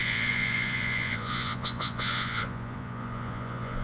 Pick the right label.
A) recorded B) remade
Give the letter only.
B